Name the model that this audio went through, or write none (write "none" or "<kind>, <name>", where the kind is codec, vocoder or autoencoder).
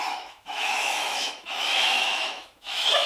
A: autoencoder, DAC-VAE